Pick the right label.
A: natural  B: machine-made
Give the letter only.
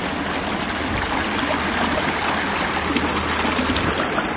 A